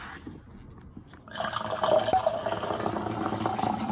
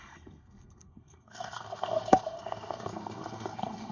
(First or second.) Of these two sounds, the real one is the first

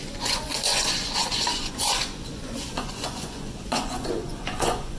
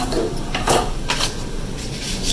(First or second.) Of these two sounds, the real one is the second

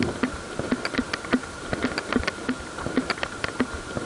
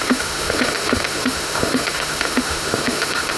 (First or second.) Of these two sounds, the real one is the first